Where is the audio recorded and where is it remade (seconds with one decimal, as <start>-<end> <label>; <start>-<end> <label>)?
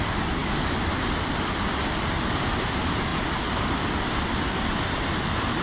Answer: 0.0-5.6 recorded